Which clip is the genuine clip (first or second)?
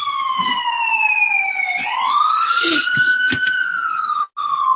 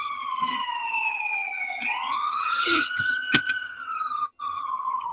first